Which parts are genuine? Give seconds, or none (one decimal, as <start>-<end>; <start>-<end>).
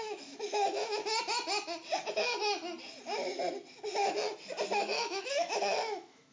1.0-4.8